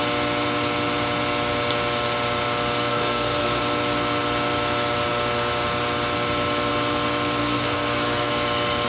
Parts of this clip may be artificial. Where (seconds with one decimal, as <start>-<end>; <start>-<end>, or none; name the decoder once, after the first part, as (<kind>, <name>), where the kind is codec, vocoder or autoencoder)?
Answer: 2.9-3.6 (codec, SNAC); 7.4-8.3